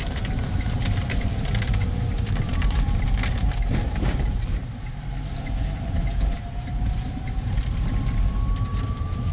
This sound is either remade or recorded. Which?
remade